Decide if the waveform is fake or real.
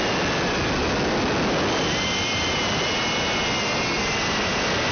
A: real